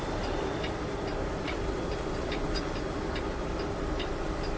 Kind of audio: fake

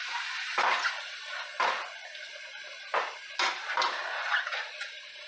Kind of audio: real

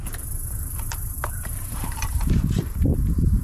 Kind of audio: fake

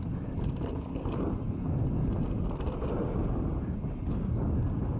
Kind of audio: real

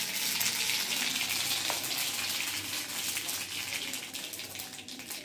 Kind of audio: real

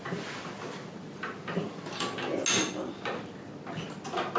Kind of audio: real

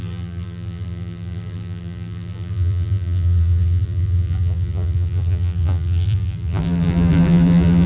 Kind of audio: fake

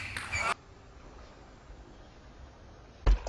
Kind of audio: real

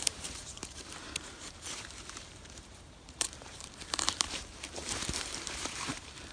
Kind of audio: fake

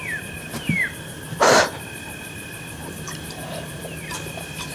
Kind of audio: fake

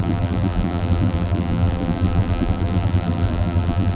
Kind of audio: fake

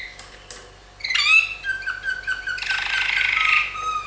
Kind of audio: real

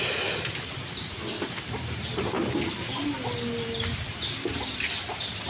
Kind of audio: real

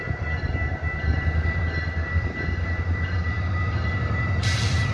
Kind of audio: fake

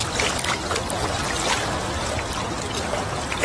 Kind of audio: real